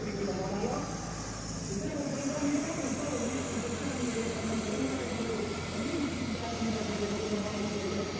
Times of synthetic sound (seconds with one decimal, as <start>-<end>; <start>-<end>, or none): 1.6-2.9; 4.1-7.7